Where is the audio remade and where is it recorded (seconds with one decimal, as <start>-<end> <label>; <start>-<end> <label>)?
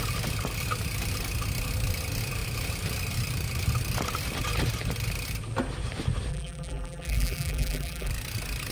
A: 0.0-6.3 recorded; 6.3-8.1 remade; 8.1-8.7 recorded